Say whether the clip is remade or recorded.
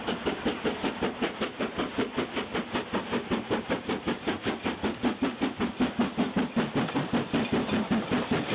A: recorded